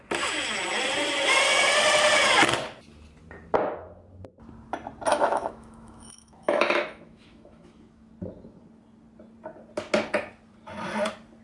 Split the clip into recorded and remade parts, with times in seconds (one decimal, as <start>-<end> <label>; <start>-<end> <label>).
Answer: 0.0-5.1 recorded; 5.1-8.1 remade; 8.1-11.4 recorded